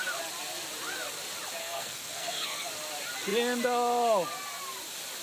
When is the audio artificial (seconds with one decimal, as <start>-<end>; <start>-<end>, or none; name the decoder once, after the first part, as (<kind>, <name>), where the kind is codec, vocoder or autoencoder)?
1.6-2.7 (codec, SNAC)